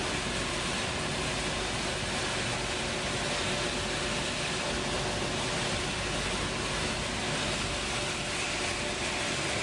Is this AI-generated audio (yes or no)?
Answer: no